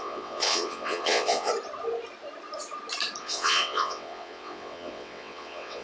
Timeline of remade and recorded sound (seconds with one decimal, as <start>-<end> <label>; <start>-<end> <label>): 0.0-1.5 remade; 1.5-3.2 recorded; 3.2-5.8 remade